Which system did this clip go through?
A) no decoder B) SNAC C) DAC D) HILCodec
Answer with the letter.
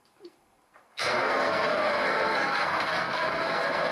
B